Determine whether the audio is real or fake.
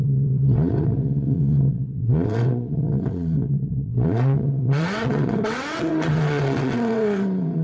fake